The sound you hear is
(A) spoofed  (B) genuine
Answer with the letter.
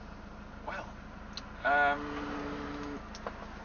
B